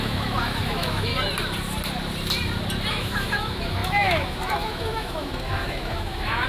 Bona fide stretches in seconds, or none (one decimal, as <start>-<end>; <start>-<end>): 1.1-2.9